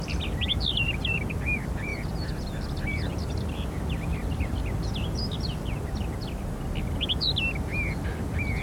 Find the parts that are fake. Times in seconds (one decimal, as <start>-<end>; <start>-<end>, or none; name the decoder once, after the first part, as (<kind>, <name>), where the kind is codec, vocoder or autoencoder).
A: none